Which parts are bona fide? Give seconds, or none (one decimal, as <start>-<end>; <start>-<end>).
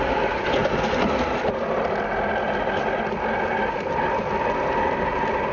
0.0-5.5